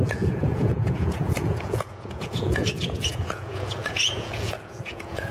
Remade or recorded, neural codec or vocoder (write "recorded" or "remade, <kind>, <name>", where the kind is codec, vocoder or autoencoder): remade, vocoder, Vocos